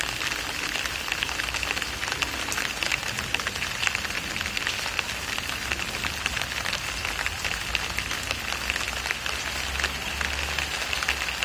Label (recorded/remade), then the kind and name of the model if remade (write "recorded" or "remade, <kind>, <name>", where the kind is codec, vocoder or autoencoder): recorded